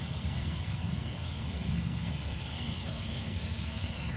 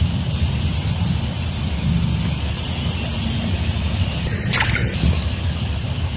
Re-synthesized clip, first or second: first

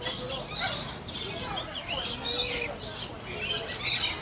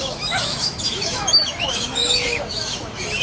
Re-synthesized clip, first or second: second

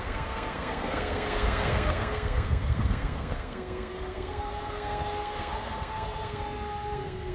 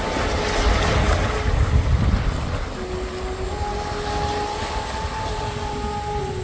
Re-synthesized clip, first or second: first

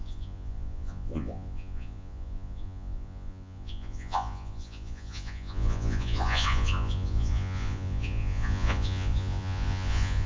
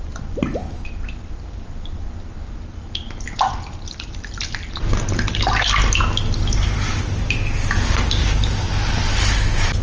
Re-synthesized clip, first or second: first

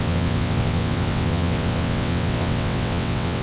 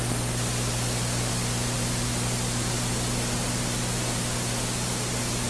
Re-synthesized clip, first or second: first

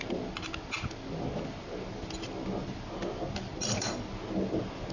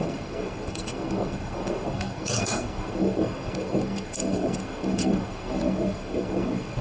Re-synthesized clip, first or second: second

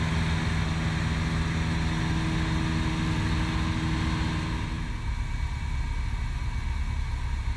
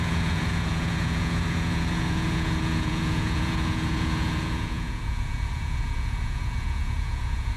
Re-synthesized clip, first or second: second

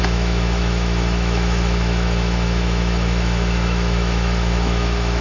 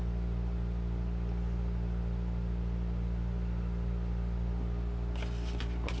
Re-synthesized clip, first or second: first